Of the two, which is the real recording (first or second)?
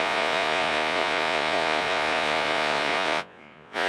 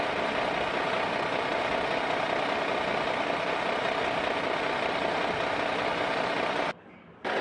second